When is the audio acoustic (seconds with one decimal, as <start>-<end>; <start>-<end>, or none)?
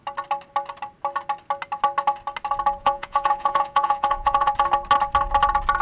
0.0-2.8; 4.5-5.8